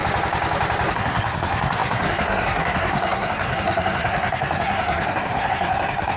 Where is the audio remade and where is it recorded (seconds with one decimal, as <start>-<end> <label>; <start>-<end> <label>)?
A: 0.0-0.9 recorded; 0.9-6.2 remade